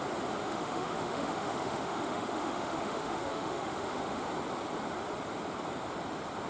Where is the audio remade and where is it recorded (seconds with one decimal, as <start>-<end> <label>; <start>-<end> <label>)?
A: 0.0-0.4 recorded; 0.4-4.3 remade; 4.3-6.5 recorded